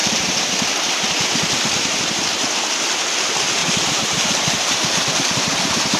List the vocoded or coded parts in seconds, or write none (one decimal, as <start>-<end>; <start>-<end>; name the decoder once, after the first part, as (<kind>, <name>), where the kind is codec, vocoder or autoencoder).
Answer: 0.0-0.6 (vocoder, BigVGAN v2); 3.6-6.0